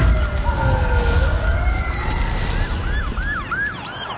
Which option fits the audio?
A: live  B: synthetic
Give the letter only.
A